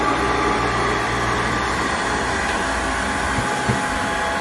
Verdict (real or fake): real